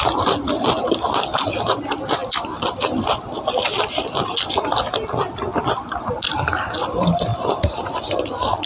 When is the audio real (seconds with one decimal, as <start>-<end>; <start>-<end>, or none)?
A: 0.0-8.7